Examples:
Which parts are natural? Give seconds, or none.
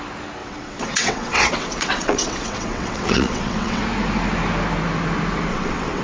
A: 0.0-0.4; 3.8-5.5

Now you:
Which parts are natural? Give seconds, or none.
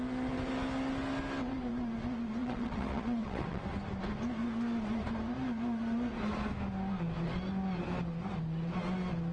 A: 0.0-2.4; 3.6-9.3